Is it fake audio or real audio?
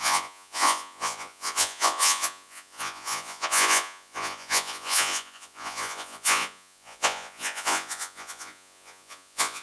fake